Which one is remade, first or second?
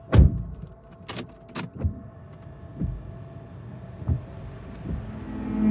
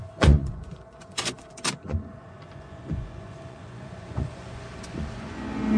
second